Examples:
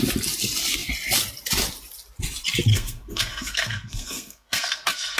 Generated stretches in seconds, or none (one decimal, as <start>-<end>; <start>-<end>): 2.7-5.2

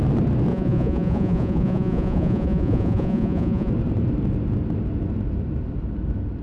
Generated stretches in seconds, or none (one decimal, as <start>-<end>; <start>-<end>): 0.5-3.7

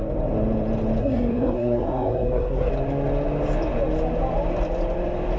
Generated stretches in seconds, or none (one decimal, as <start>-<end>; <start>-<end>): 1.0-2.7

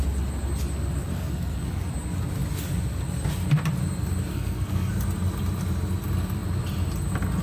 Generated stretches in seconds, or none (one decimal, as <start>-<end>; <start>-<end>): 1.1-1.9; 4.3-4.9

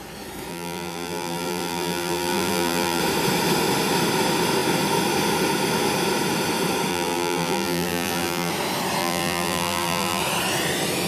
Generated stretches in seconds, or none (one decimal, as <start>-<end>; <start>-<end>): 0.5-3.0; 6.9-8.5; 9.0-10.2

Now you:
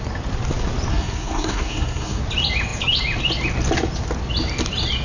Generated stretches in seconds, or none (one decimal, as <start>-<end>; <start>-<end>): 0.9-2.2

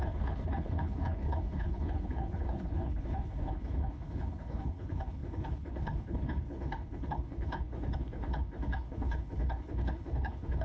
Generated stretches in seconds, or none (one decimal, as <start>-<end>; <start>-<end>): 0.0-10.6

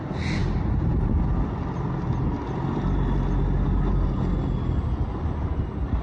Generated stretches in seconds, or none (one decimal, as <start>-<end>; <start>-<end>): none